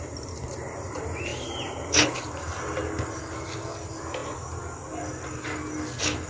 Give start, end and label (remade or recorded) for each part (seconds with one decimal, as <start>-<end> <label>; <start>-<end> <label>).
0.0-6.3 recorded